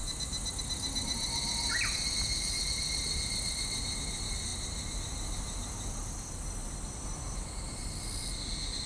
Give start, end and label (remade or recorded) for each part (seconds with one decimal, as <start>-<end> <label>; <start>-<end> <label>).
0.0-8.9 recorded